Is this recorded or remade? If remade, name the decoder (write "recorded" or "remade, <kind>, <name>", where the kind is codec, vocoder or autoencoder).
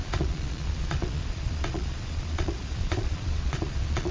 remade, vocoder, Vocos